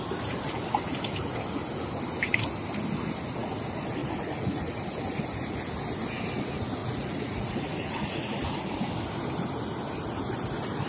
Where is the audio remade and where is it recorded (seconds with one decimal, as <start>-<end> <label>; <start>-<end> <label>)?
0.0-4.0 recorded; 4.0-4.8 remade; 4.8-6.8 recorded; 6.8-8.7 remade; 8.7-10.9 recorded